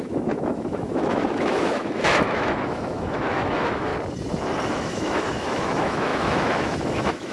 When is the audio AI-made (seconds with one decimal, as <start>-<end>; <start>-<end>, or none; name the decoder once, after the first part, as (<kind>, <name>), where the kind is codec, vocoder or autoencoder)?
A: 0.0-3.9 (autoencoder, DAC-VAE); 4.7-7.3

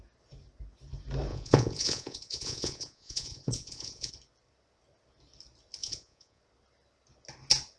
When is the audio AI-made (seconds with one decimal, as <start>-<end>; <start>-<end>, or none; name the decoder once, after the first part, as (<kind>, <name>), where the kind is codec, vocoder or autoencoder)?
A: 1.3-4.1 (vocoder, Vocos); 5.8-6.4

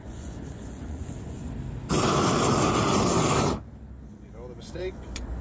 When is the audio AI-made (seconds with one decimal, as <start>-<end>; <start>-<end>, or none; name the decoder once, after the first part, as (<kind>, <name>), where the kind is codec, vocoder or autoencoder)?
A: 0.0-1.4 (vocoder, Vocos); 4.6-5.4

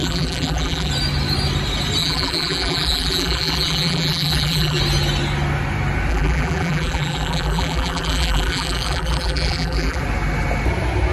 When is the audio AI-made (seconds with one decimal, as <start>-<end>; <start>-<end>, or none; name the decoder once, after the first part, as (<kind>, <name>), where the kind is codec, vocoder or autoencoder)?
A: 0.0-0.9 (vocoder, BigVGAN v2); 2.0-4.8; 6.1-10.0

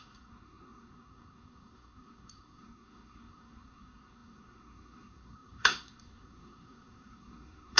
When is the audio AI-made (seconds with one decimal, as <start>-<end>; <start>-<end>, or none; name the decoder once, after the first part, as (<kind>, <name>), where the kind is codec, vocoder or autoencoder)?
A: 0.0-7.8 (codec, SNAC)